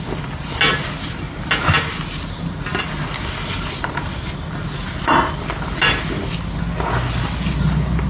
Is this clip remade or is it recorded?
recorded